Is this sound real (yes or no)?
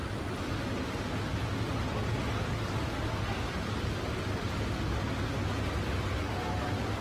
yes